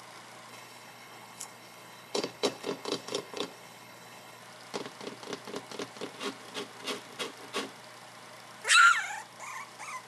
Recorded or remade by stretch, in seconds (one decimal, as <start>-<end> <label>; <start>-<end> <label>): 0.0-0.5 recorded; 0.5-4.4 remade; 4.4-10.1 recorded